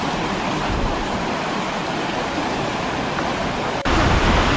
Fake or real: real